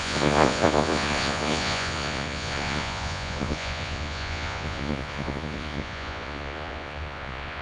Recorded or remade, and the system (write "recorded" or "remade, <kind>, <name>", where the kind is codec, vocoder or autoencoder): remade, vocoder, Vocos